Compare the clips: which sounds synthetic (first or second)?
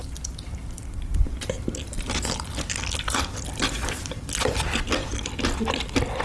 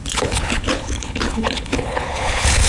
second